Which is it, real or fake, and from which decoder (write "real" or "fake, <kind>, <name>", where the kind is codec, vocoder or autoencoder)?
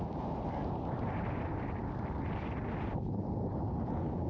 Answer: real